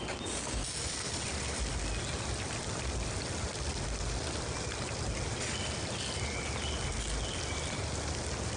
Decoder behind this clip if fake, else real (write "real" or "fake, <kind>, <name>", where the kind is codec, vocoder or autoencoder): real